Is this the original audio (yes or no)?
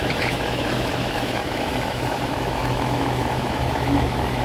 no